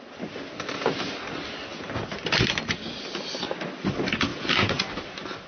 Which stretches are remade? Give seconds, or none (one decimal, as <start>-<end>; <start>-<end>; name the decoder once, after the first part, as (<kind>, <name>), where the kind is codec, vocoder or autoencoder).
4.3-4.8 (vocoder, Vocos)